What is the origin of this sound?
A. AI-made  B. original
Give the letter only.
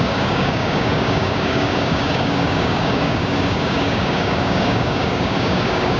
A